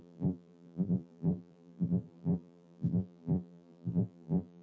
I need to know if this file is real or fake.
fake